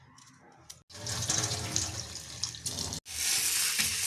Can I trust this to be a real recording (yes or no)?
yes